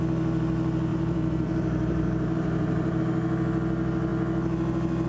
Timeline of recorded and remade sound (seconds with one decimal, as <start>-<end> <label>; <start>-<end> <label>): 0.0-0.9 recorded; 0.9-3.0 remade; 3.0-5.1 recorded

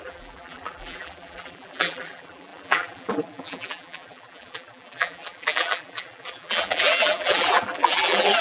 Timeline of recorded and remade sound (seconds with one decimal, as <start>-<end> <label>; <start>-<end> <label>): 0.0-8.4 remade

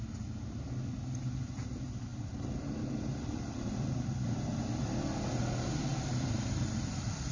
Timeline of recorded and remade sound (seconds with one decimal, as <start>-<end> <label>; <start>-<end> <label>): 0.0-2.1 recorded; 2.1-4.6 remade; 4.6-5.9 recorded; 5.9-7.3 remade